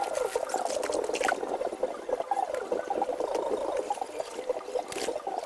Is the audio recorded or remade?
recorded